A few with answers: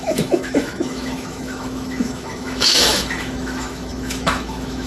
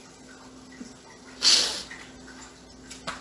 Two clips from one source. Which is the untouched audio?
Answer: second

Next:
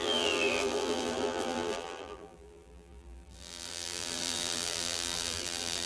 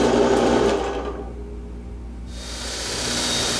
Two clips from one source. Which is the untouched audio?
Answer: second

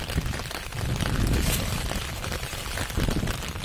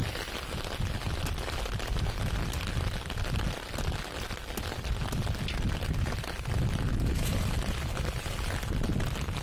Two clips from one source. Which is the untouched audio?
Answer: second